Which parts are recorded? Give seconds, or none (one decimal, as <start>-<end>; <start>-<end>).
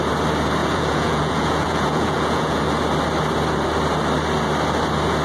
0.0-0.6; 2.6-5.2